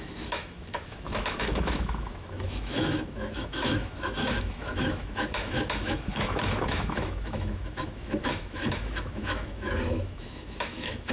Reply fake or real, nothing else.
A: fake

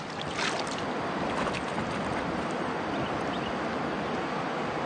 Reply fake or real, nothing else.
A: real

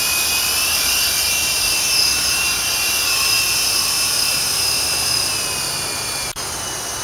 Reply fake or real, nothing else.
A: real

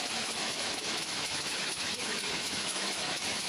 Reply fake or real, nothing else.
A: fake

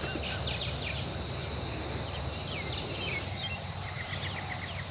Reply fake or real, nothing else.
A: real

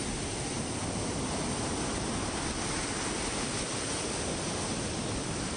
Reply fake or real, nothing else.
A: real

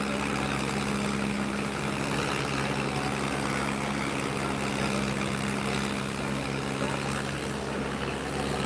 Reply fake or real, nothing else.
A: real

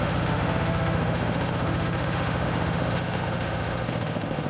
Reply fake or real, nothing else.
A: fake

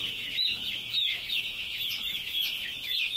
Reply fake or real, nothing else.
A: fake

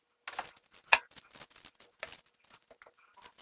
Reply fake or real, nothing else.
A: real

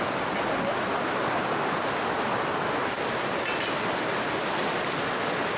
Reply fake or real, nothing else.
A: real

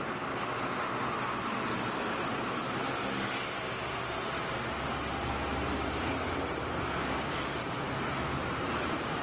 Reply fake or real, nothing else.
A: real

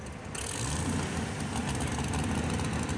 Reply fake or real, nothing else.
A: real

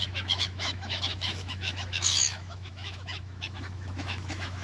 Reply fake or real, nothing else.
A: fake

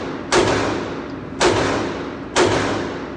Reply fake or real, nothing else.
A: real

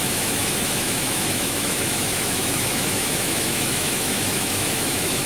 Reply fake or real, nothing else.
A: fake